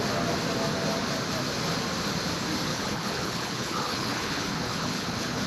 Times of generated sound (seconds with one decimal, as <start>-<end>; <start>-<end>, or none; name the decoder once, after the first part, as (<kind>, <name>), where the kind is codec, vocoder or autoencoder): 2.7-5.5 (codec, HILCodec)